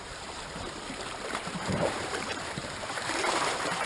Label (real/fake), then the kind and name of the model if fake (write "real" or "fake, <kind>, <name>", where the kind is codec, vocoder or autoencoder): fake, vocoder, BigVGAN v2